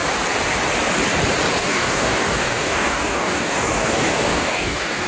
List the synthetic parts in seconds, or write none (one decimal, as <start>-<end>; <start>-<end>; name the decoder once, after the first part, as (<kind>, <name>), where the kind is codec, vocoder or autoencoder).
1.6-5.1 (codec, DAC)